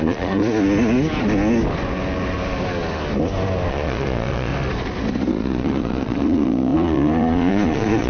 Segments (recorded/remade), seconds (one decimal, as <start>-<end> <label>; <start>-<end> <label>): 0.0-0.4 remade; 0.4-3.7 recorded; 3.7-4.5 remade; 4.5-5.3 recorded; 5.3-8.1 remade